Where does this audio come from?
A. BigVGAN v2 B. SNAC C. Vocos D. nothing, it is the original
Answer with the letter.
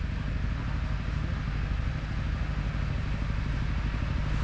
D